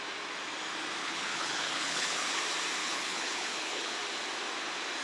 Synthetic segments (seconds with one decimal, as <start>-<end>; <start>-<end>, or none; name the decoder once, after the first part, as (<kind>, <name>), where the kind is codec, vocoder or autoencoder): 1.0-2.4 (codec, HILCodec); 2.8-3.9

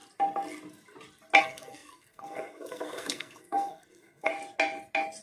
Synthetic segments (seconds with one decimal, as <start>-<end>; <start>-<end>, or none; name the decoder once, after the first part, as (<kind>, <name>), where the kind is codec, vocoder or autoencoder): 1.4-4.3 (codec, SNAC)

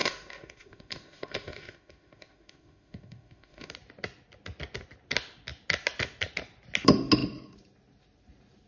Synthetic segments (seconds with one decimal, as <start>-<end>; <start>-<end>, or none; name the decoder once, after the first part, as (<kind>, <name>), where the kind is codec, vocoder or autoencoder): 0.0-3.7 (autoencoder, DAC-VAE)

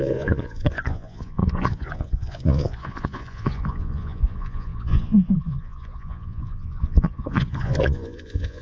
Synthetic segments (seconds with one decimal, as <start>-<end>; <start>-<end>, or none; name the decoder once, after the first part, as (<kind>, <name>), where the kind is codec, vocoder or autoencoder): 0.0-8.6 (vocoder, Vocos)

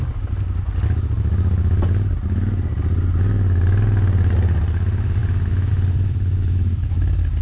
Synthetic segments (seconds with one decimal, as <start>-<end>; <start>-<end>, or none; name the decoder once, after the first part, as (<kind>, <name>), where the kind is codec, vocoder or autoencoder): none

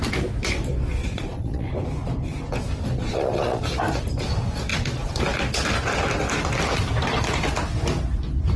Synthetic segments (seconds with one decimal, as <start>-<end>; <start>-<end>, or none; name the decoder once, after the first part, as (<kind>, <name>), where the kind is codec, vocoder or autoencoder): 1.0-1.7 (vocoder, Vocos); 3.0-3.6; 4.7-5.2

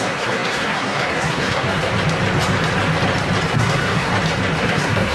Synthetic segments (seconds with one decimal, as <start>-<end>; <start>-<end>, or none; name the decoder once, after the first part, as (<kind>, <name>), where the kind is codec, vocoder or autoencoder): 0.0-1.9 (codec, SNAC); 3.5-4.1; 4.6-5.1

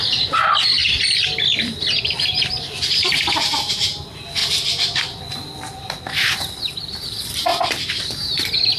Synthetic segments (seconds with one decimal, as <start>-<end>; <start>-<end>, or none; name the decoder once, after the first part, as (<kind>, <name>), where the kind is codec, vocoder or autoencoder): 0.8-3.7 (vocoder, BigVGAN v2); 7.5-8.1